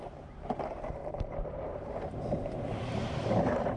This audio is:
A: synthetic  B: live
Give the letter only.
A